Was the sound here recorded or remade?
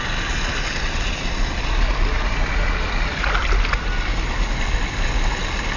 recorded